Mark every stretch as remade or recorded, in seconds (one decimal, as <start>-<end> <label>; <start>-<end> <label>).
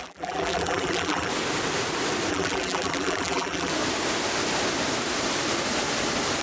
0.0-1.3 remade; 1.3-2.3 recorded; 2.3-3.7 remade; 3.7-6.4 recorded